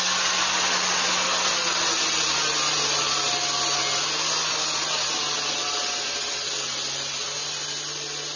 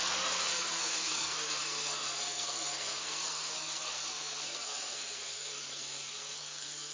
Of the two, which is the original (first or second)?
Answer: first